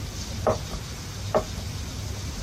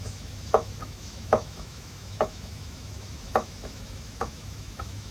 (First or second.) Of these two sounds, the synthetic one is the second